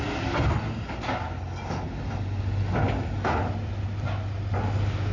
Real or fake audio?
real